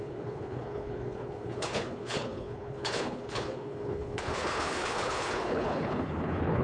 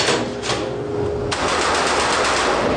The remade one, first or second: first